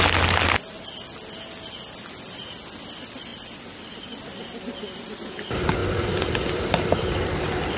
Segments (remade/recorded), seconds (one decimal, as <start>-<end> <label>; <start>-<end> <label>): 0.0-7.8 recorded